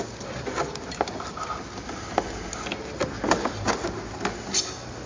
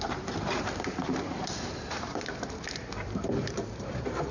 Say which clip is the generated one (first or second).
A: second